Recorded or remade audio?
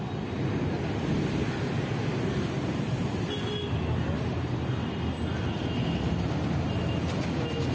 recorded